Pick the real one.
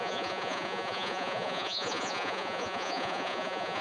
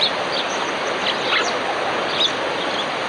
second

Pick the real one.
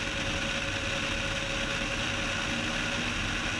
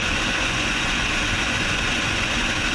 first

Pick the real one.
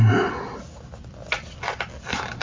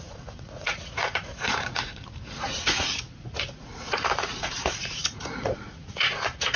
first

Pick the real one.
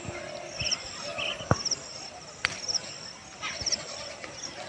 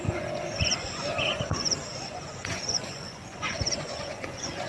first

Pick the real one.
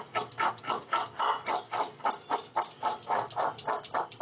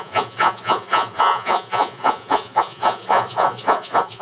first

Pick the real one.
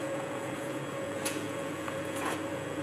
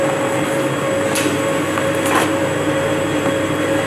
second